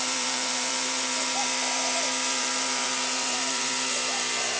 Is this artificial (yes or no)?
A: yes